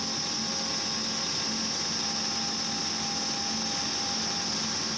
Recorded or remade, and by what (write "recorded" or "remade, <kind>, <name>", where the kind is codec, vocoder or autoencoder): recorded